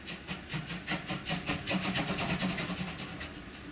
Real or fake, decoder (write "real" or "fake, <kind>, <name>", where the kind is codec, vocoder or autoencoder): real